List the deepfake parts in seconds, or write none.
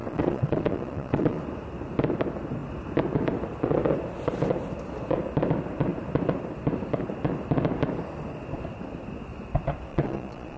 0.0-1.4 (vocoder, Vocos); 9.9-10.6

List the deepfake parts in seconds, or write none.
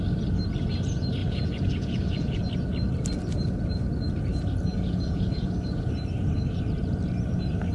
1.2-2.4 (vocoder, Vocos); 4.7-5.5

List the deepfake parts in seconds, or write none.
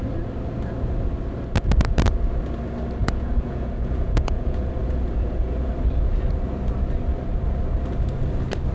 3.0-5.7 (vocoder, Vocos)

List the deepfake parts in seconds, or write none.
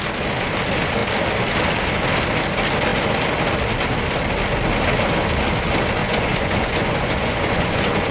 6.0-8.1 (vocoder, Vocos)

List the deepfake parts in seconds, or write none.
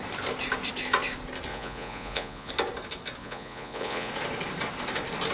1.5-2.5 (vocoder, Vocos); 3.2-4.1